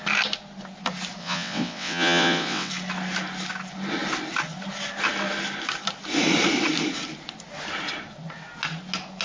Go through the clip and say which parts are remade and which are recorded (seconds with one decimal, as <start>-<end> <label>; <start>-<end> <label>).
0.0-1.2 recorded; 1.2-2.7 remade; 2.7-9.2 recorded